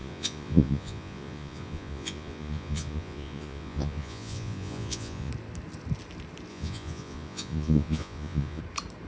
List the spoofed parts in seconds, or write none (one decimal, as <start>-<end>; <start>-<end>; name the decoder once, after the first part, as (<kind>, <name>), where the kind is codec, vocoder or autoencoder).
0.0-5.3 (vocoder, Vocos); 6.5-8.6